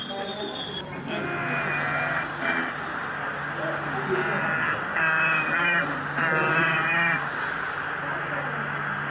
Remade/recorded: recorded